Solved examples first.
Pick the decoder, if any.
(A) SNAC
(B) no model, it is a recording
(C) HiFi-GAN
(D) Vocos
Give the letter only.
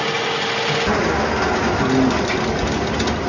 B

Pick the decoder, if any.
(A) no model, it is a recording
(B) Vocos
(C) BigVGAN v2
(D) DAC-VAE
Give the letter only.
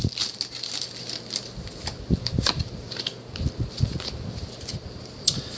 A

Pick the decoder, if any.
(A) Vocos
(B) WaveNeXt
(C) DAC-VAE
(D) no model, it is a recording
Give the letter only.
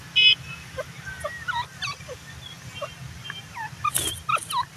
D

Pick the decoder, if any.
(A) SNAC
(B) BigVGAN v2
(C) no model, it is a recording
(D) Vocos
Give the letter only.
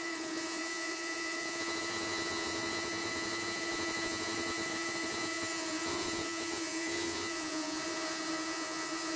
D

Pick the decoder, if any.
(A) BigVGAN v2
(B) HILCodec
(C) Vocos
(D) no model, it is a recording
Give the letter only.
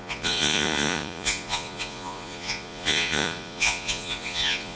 C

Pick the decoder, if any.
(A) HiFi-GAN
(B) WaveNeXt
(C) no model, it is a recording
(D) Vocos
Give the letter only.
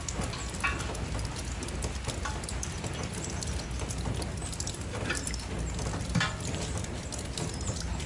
C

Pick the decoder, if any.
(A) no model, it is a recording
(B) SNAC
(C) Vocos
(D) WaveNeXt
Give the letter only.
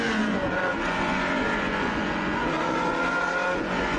C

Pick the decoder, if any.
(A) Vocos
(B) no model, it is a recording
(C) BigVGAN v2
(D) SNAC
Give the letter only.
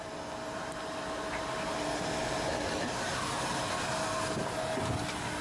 B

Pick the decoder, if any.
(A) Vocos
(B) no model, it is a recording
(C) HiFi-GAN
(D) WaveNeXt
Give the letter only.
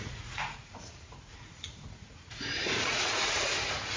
A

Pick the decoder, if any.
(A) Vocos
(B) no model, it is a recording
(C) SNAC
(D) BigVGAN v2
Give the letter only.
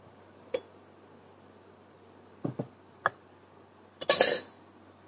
B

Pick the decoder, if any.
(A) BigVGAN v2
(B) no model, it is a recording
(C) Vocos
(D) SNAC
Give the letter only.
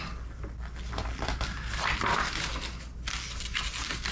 B